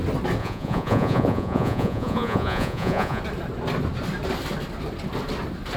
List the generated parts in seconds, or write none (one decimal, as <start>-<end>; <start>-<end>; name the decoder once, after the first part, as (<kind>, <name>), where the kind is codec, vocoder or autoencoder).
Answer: 0.4-3.2 (vocoder, Vocos)